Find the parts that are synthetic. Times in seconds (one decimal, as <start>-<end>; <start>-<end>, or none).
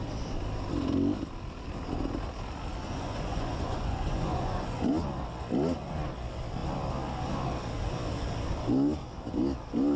2.7-4.8